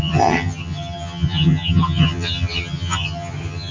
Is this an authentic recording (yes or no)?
no